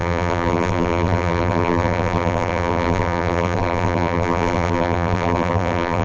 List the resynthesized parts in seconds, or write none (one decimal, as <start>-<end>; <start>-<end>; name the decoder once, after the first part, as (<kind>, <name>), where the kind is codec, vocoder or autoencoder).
0.0-6.0 (vocoder, BigVGAN v2)